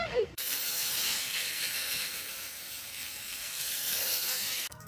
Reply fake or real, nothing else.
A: fake